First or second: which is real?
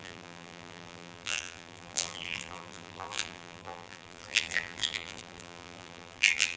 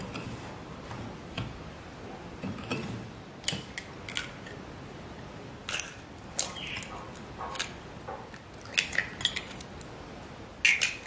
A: second